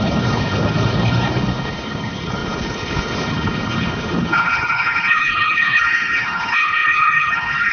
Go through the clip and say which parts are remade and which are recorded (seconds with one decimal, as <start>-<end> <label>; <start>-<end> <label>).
0.0-7.7 remade